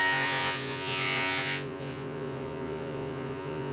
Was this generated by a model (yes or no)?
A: yes